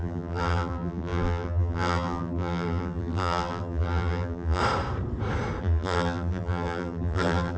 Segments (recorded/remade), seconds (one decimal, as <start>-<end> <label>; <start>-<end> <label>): 0.0-4.6 remade; 4.6-5.6 recorded; 5.6-7.6 remade